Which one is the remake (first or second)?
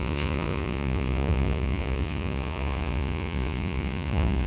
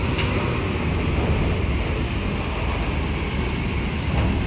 first